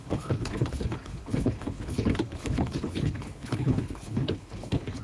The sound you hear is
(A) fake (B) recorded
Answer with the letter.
A